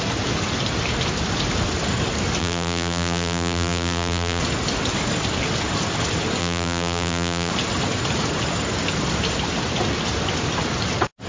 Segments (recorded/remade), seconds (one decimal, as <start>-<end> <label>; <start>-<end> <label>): 0.0-2.4 recorded; 2.4-4.4 remade; 4.4-6.4 recorded; 6.4-7.5 remade; 7.5-11.3 recorded